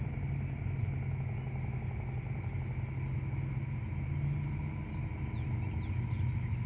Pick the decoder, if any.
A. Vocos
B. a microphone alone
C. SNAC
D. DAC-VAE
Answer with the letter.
B